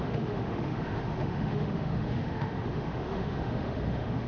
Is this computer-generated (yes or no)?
yes